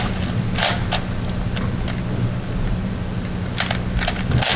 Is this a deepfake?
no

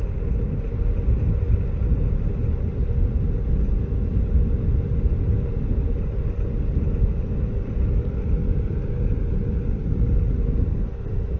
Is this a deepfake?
no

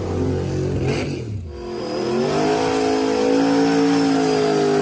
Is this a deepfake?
no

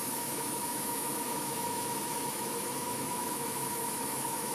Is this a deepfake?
yes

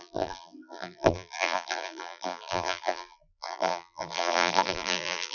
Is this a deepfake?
yes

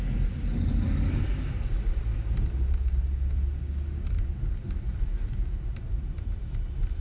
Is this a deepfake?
no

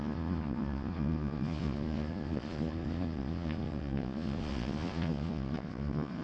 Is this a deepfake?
yes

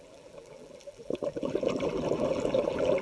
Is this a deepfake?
yes